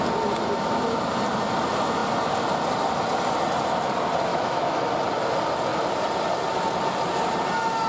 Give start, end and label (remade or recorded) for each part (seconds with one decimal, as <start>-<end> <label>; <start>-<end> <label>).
0.0-4.3 recorded; 4.3-4.8 remade; 4.8-7.9 recorded